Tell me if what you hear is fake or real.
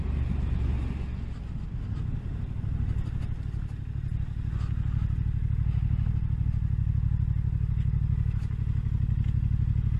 real